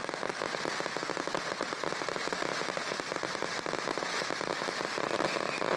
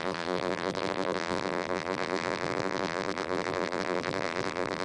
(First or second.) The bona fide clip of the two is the first